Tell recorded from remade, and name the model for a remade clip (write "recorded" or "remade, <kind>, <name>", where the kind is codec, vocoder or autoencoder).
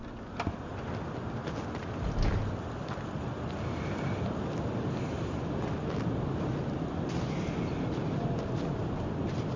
recorded